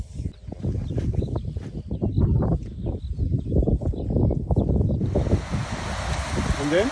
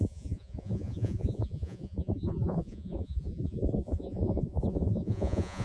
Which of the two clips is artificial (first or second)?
second